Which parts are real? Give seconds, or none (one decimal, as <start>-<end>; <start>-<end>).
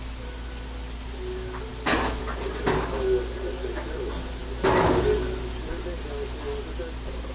0.0-7.3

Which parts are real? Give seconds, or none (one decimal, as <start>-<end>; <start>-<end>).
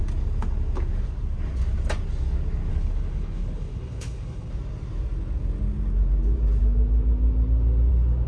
0.0-2.7; 4.5-8.3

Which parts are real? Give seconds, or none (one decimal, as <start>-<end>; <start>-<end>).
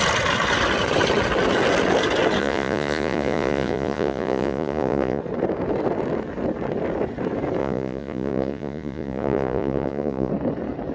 0.0-2.4; 5.2-7.6; 10.3-10.9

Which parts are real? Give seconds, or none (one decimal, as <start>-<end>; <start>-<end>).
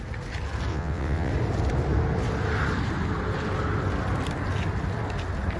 0.0-0.7; 1.3-5.6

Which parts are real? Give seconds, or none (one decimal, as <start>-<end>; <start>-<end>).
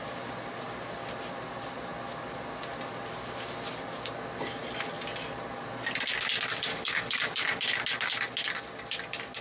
0.0-6.7; 7.8-9.4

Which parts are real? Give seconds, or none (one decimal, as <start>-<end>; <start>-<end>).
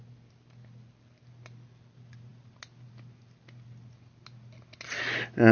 0.0-5.5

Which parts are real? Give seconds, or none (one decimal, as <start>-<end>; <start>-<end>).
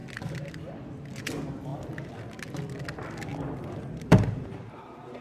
0.7-1.7; 2.4-3.3